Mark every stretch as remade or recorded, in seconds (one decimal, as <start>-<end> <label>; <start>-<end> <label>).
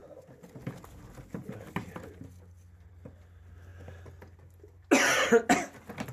0.0-6.1 recorded